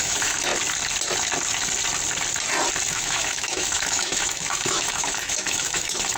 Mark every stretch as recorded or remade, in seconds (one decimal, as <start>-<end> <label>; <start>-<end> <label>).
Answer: 0.0-0.5 remade; 0.5-2.9 recorded; 2.9-6.2 remade